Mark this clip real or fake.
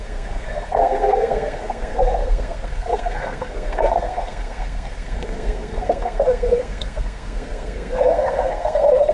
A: fake